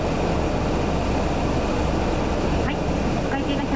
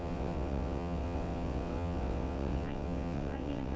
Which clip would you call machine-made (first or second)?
second